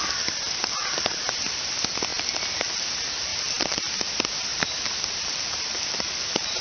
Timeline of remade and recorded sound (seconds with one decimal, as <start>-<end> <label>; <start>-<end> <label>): 0.0-2.1 recorded; 2.1-2.7 remade; 2.7-3.3 recorded; 3.3-4.0 remade; 4.0-4.5 recorded; 4.5-6.0 remade; 6.0-6.6 recorded